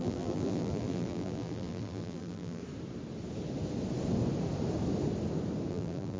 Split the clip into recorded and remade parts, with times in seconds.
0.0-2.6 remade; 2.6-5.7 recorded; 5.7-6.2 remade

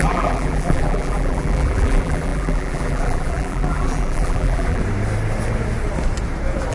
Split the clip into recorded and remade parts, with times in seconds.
0.0-4.8 remade; 4.8-6.7 recorded

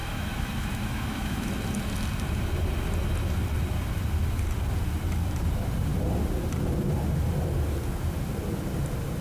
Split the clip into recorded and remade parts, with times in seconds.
0.0-1.5 remade; 1.5-9.2 recorded

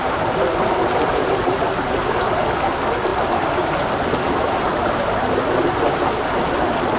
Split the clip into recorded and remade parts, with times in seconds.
0.0-1.7 remade; 1.7-3.1 recorded; 3.1-5.9 remade; 5.9-7.0 recorded

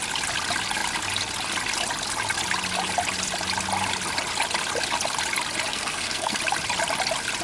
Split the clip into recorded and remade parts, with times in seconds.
0.0-5.7 recorded; 5.7-6.4 remade; 6.4-7.4 recorded

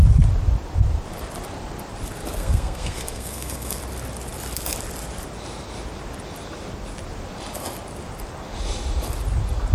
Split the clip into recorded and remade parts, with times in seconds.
0.0-2.4 recorded; 2.4-3.8 remade; 3.8-9.7 recorded